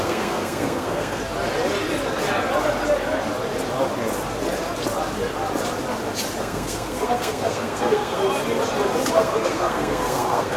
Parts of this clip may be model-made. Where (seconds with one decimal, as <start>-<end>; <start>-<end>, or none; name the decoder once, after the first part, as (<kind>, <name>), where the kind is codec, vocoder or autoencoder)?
0.0-1.2 (codec, SNAC); 6.4-8.2; 9.1-10.6